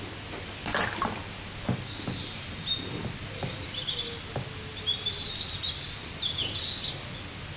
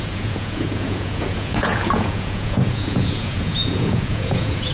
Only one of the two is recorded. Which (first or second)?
first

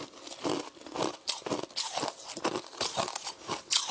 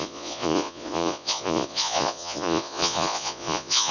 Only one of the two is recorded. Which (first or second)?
first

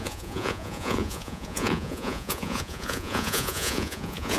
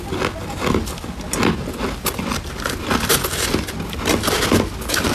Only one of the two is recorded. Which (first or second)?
second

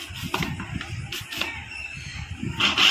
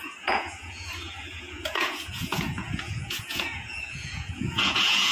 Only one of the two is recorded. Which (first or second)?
first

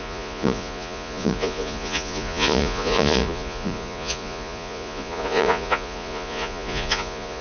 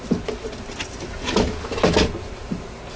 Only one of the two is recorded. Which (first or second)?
second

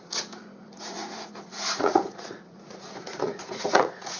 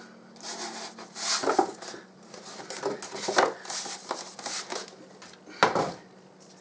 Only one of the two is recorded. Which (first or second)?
second